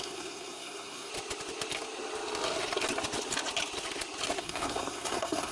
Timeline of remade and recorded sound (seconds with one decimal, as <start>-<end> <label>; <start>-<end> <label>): 0.0-1.1 remade; 1.1-4.4 recorded; 4.4-5.5 remade